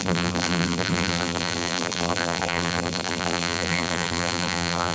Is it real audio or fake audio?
fake